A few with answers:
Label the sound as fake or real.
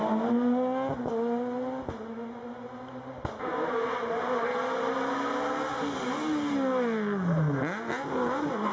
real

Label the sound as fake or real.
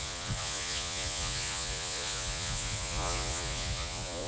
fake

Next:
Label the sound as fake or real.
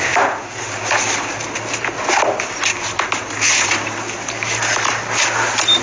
real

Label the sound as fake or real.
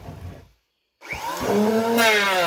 real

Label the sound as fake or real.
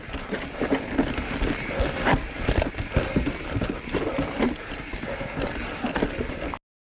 real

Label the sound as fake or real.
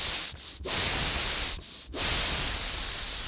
real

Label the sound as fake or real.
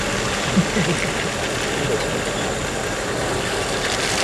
real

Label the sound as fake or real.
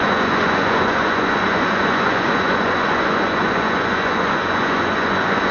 fake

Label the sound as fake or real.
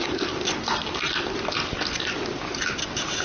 real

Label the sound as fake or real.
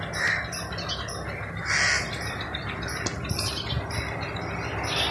real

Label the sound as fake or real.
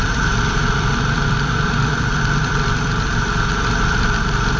fake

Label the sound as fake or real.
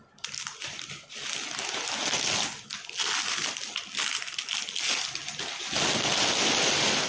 real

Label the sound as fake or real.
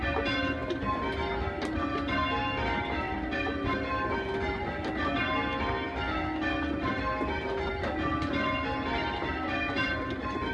real